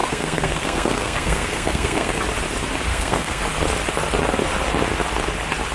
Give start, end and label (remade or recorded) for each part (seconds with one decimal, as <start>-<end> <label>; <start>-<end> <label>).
0.0-2.2 remade; 2.2-2.9 recorded; 2.9-3.4 remade; 3.4-5.7 recorded